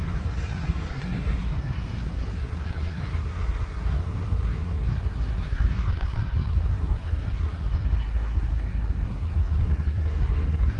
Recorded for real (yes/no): no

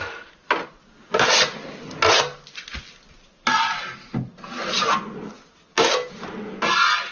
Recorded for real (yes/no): yes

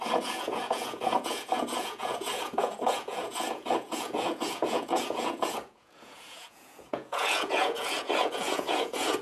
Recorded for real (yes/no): no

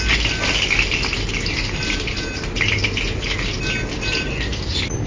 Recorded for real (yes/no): yes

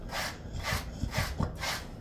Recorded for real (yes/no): yes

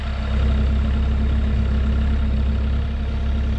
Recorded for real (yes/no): yes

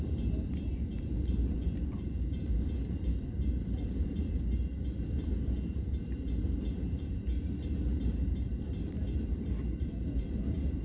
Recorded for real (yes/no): no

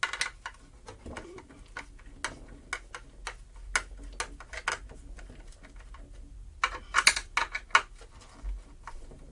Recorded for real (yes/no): yes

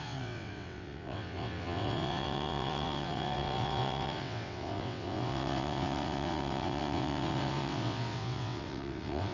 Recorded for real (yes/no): no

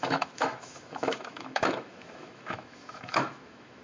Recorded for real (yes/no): no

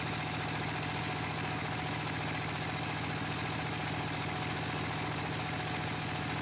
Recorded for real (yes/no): yes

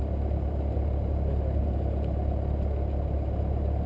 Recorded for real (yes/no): yes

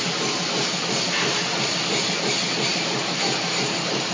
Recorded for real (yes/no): yes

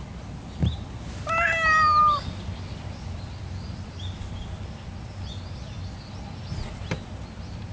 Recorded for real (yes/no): yes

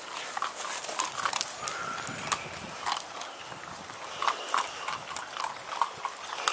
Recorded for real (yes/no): yes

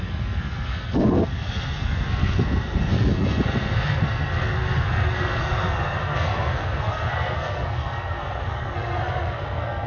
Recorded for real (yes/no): no